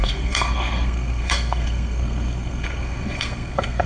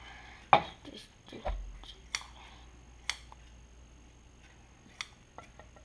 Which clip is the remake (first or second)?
first